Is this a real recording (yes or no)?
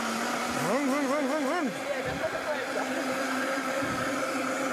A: yes